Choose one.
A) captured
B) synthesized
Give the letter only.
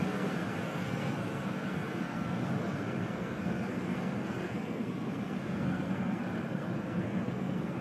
B